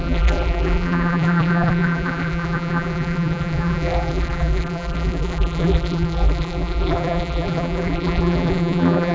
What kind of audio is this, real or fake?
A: fake